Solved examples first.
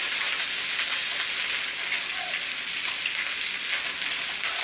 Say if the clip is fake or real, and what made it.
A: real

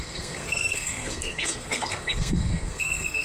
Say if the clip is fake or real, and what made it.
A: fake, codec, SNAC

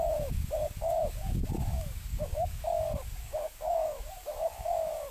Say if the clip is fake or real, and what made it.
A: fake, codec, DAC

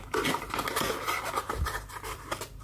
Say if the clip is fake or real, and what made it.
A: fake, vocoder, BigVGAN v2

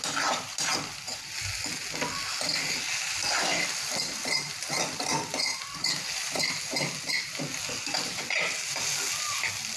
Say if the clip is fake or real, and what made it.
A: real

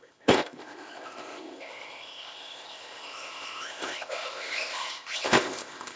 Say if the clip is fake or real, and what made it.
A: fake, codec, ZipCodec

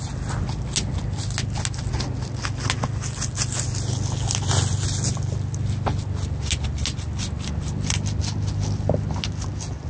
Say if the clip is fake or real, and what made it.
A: real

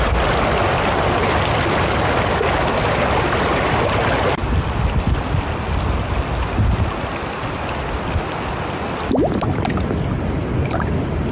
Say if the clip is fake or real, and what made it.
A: real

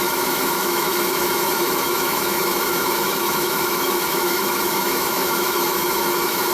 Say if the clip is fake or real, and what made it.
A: fake, autoencoder, DAC-VAE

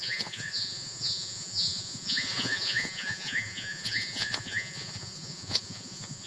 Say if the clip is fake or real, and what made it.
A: fake, vocoder, Vocos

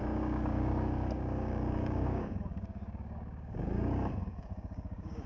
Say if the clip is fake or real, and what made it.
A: fake, codec, DAC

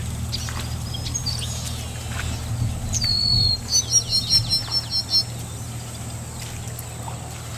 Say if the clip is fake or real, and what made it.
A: real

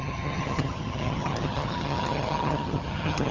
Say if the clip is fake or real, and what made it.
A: fake, vocoder, HiFi-GAN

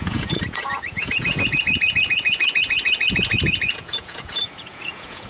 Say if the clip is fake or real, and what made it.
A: fake, vocoder, Vocos